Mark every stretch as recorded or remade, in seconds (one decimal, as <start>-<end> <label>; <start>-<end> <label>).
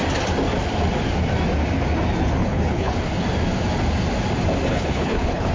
0.0-2.4 recorded; 2.4-3.0 remade; 3.0-4.7 recorded; 4.7-5.5 remade